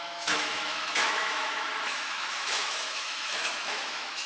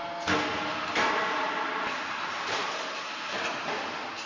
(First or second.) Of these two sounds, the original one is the second